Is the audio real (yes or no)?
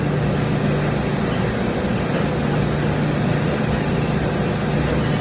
yes